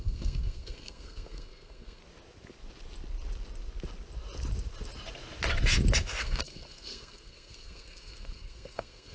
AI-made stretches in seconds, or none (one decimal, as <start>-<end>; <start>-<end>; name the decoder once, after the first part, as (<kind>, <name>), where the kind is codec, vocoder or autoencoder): 0.0-2.0 (codec, SNAC); 6.2-9.1